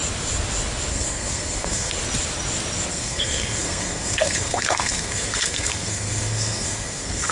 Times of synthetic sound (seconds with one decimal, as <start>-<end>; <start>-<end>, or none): 0.9-1.9; 2.9-7.3